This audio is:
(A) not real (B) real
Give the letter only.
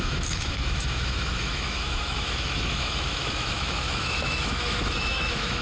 A